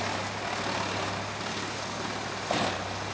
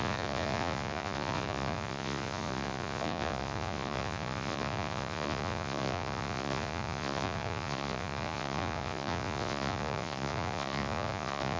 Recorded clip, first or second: first